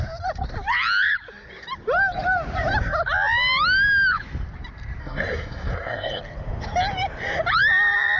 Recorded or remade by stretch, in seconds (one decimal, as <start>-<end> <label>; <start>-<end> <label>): 0.0-5.0 recorded; 5.0-6.2 remade; 6.2-8.2 recorded